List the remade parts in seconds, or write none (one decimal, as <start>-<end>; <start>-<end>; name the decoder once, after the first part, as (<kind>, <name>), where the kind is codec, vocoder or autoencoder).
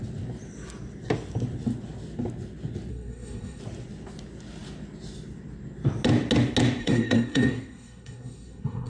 2.9-3.6 (codec, SNAC); 6.8-8.9